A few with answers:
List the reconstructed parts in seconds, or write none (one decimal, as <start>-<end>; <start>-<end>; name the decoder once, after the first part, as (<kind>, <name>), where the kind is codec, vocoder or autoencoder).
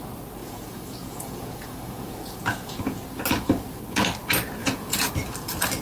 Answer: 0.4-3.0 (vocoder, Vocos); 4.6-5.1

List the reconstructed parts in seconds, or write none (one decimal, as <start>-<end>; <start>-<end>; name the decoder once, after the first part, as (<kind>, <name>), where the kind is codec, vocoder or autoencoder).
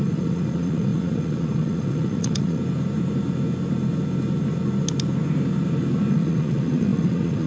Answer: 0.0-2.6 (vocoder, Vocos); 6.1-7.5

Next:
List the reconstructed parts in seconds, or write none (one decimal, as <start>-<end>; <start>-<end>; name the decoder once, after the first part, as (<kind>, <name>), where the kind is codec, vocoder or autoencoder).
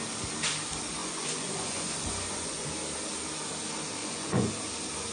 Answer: 1.0-2.7 (vocoder, Vocos); 4.0-4.5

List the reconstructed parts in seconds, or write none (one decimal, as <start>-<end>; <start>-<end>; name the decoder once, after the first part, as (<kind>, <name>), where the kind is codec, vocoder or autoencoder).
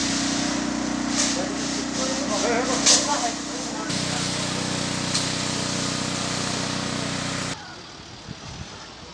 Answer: none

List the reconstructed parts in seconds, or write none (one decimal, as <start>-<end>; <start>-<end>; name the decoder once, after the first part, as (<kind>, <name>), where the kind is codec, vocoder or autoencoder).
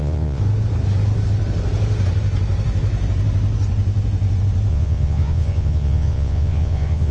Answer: 0.0-0.4 (vocoder, Vocos); 4.7-7.1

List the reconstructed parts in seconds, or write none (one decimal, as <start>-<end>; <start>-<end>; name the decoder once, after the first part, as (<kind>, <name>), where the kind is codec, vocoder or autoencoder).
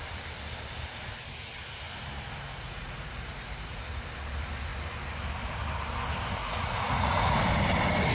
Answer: 2.5-4.0 (vocoder, Vocos); 6.4-7.4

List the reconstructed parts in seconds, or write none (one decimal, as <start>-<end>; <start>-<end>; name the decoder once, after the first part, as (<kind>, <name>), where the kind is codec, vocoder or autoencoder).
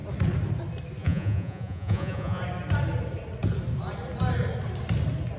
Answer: 1.0-2.4 (vocoder, Vocos)